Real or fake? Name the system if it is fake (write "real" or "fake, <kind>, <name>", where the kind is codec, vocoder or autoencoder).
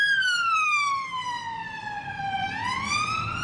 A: fake, vocoder, BigVGAN v2